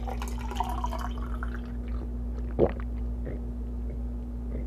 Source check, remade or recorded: recorded